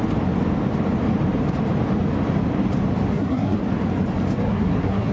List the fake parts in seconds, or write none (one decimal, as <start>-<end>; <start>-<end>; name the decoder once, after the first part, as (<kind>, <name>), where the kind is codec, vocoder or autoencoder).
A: 3.1-3.6 (codec, SNAC); 4.4-5.1